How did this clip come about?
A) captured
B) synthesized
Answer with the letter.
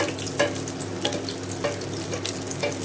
A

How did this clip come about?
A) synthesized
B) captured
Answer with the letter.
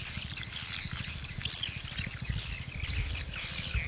B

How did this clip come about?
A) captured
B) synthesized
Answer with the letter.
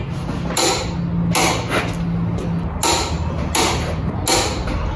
A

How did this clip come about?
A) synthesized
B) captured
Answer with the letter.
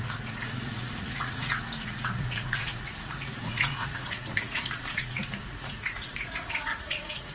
A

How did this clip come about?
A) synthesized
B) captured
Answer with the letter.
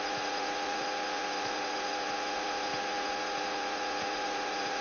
A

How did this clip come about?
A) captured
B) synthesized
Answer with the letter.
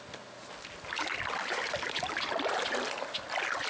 A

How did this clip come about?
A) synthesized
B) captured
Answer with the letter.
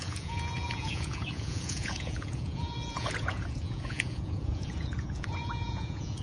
A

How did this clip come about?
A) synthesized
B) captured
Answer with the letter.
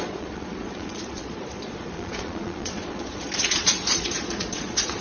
A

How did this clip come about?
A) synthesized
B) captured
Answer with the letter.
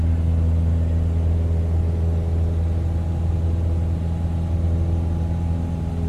B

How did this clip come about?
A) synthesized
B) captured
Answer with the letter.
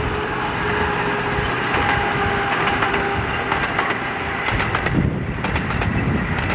B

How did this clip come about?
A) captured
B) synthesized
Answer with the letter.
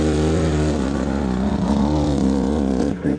B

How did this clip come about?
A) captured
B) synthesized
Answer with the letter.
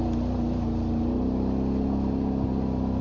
A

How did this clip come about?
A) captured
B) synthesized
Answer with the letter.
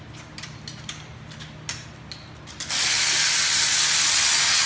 A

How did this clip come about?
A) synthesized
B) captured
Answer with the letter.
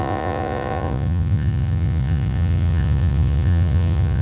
A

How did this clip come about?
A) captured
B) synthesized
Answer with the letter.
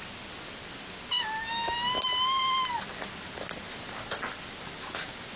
A